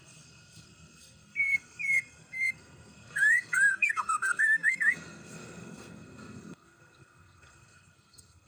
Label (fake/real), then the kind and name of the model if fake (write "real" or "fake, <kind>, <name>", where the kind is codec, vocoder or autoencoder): fake, codec, SNAC